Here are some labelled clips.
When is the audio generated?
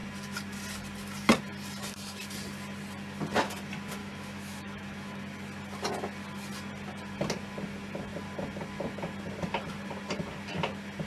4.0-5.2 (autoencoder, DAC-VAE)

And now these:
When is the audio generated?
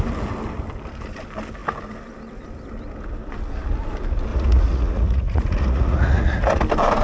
4.3-6.5 (vocoder, Vocos)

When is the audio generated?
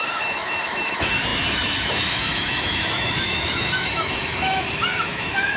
0.0-5.6 (autoencoder, DAC-VAE)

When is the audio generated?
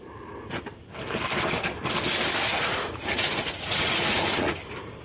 2.5-4.6 (vocoder, Vocos)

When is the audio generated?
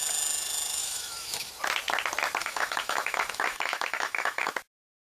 0.8-1.5 (autoencoder, DAC-VAE); 2.4-4.5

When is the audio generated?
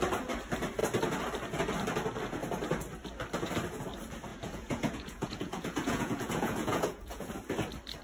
4.3-7.3 (vocoder, Vocos)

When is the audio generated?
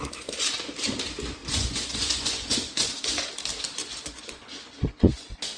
1.4-3.3 (vocoder, Vocos); 3.8-5.6